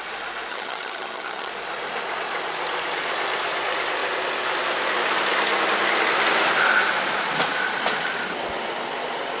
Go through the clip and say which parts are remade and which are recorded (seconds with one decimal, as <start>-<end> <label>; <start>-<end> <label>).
0.0-0.5 recorded; 0.5-1.5 remade; 1.5-9.4 recorded